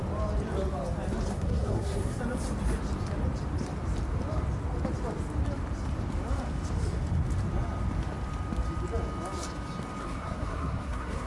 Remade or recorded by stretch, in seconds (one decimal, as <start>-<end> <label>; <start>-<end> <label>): 0.0-1.3 recorded; 1.3-2.2 remade; 2.2-10.0 recorded; 10.0-11.3 remade